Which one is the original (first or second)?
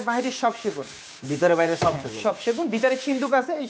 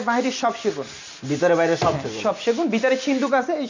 second